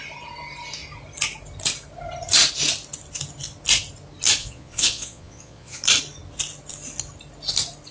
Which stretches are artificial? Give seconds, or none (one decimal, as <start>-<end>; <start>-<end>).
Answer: 4.4-5.8